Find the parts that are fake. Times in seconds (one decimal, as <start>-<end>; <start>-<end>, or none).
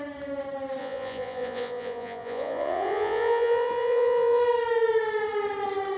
0.8-4.4